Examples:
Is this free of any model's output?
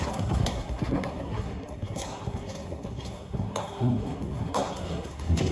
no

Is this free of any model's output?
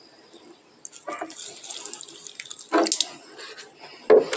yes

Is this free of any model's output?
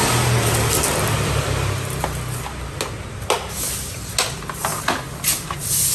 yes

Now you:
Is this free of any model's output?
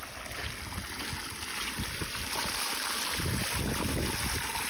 yes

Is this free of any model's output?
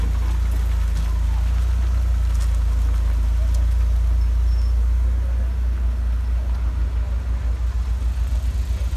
yes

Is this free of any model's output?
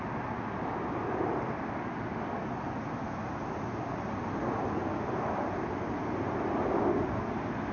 yes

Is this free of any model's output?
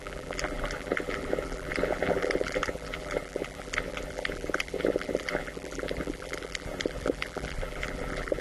no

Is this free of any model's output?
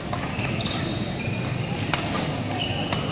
yes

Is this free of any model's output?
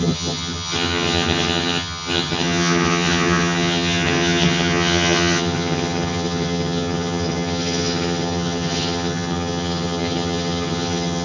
no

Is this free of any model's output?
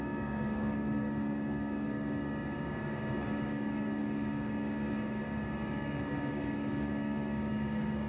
no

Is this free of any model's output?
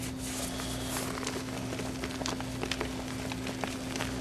yes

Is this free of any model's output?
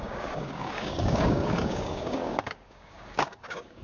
no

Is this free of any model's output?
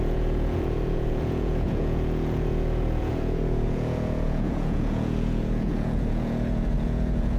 no